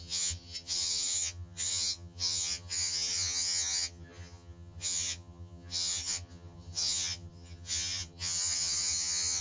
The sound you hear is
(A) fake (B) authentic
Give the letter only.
A